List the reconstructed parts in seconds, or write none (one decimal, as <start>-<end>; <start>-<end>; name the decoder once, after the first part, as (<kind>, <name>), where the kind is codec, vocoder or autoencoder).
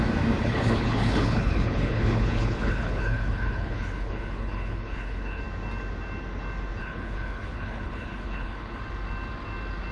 0.4-5.4 (codec, HILCodec); 6.8-8.8